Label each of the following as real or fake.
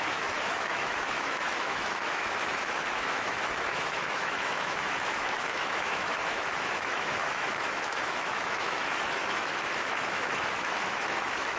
fake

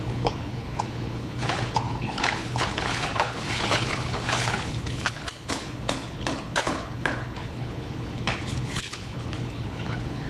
fake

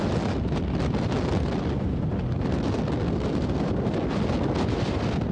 real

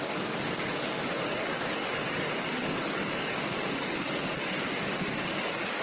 fake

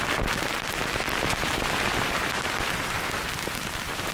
fake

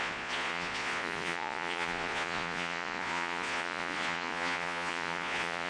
fake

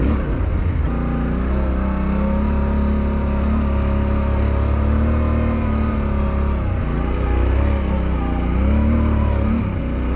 real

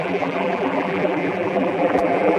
fake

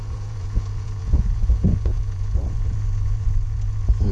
fake